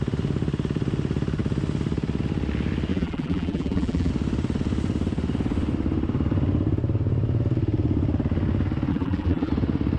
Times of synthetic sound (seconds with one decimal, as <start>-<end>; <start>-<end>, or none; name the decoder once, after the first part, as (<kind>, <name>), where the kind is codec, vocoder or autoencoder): 2.9-4.1 (vocoder, BigVGAN v2); 8.9-9.5